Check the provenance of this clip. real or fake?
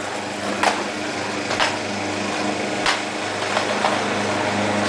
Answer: real